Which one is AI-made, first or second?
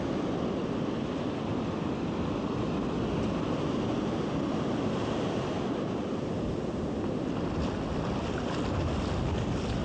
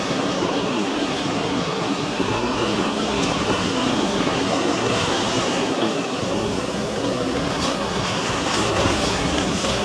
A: second